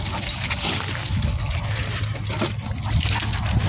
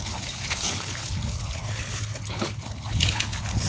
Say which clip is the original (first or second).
first